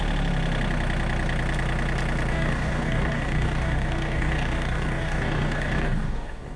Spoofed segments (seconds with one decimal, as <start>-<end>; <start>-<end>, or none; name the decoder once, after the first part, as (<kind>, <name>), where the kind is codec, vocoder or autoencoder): 2.3-6.6 (codec, DAC)